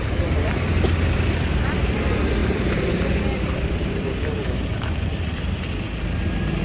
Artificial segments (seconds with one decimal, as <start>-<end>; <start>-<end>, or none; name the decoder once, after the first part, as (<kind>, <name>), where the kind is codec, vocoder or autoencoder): none